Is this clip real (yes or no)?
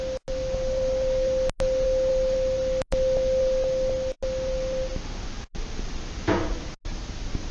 yes